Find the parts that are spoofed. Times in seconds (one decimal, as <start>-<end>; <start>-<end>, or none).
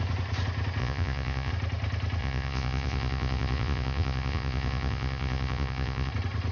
0.8-1.5; 2.2-6.1